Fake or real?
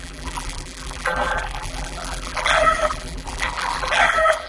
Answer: fake